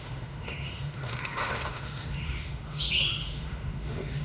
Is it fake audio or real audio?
fake